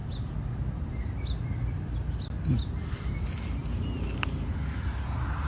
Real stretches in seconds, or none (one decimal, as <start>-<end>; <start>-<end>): 0.0-5.5